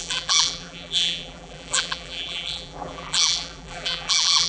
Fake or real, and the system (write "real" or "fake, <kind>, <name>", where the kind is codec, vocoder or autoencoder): fake, vocoder, BigVGAN v2